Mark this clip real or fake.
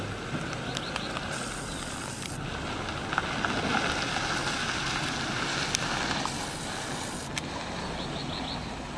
real